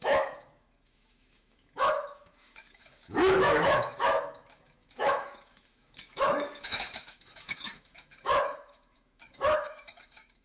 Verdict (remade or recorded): remade